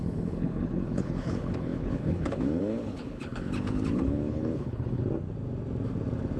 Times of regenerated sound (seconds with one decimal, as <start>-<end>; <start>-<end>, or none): 0.0-5.0

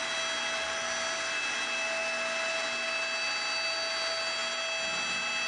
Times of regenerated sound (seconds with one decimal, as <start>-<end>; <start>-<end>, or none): none

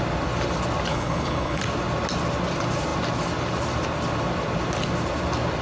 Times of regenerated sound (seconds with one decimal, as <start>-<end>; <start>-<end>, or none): 0.9-1.6

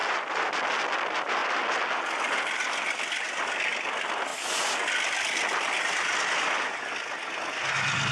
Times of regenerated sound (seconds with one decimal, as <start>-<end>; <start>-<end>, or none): none